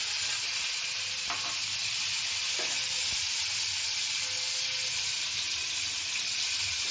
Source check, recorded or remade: recorded